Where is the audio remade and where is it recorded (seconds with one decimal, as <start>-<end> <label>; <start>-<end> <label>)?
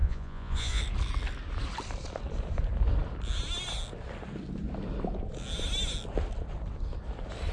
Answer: 0.0-0.8 remade; 0.8-7.5 recorded